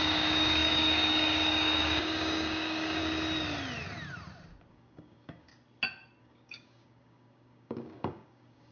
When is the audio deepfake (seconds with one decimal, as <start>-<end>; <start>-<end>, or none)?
0.0-3.0; 4.7-5.5; 6.2-8.7